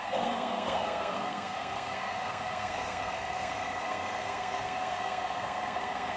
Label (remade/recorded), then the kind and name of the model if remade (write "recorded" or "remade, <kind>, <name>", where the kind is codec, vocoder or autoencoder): remade, codec, SNAC